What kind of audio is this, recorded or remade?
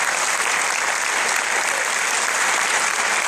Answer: recorded